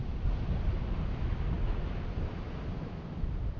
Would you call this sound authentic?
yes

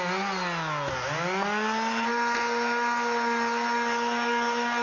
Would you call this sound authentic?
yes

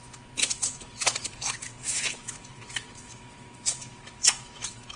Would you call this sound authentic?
no